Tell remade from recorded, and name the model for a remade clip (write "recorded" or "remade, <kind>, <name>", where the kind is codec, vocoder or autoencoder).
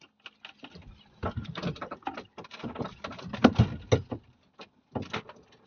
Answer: recorded